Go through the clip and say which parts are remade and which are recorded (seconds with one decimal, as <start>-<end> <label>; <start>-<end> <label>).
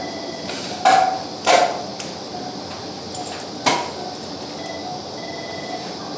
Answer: 0.0-6.2 recorded